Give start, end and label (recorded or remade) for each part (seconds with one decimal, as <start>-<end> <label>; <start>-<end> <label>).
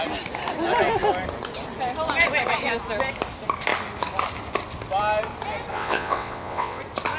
0.0-5.7 recorded; 5.7-6.8 remade; 6.8-7.2 recorded